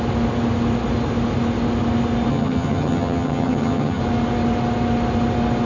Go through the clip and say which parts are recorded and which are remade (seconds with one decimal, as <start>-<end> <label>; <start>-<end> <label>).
0.0-2.3 recorded; 2.3-4.0 remade; 4.0-5.6 recorded